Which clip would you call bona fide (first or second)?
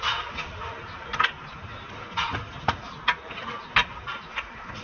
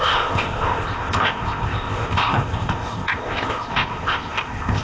first